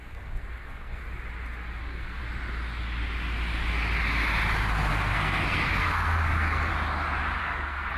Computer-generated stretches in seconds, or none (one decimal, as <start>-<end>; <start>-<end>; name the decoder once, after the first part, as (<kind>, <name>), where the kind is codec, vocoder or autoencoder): 0.0-1.0 (codec, SNAC); 1.8-2.2; 4.9-6.7; 7.4-8.0